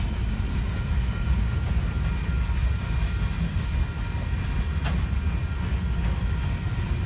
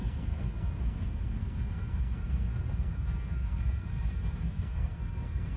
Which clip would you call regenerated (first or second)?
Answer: second